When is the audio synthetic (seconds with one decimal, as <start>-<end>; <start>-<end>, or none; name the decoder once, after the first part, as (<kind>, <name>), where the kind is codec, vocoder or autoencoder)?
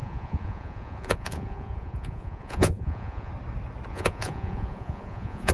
0.0-3.3 (vocoder, Vocos); 3.9-5.5